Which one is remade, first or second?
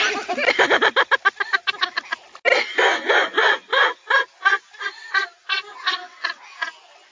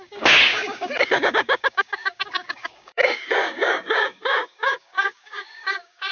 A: second